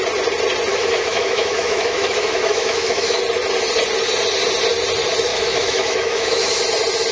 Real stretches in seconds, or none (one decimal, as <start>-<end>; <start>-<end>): 0.0-0.7; 3.2-5.3; 6.6-7.1